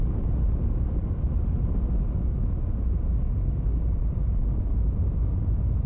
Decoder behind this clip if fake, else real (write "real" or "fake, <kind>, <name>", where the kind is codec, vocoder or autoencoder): real